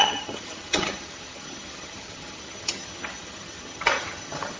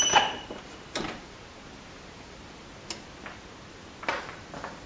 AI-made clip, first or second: first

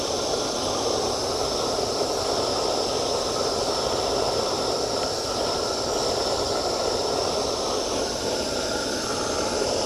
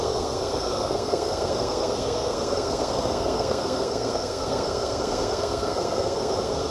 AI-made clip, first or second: second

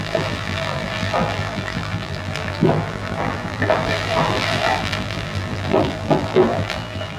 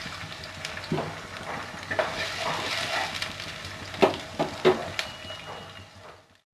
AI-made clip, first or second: first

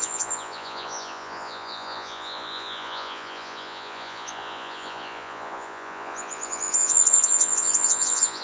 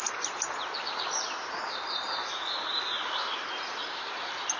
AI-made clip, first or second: first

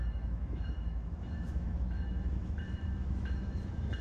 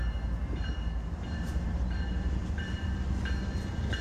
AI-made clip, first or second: first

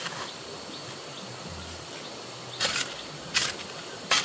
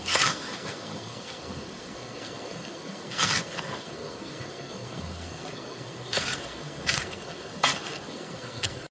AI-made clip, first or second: second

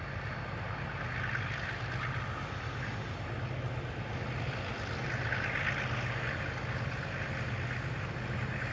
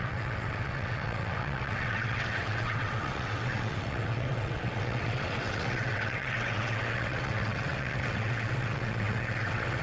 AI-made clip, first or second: second